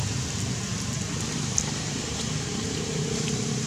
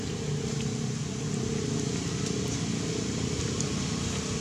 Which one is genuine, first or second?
second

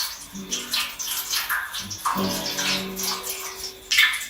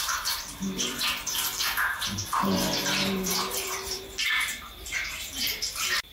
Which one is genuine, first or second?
first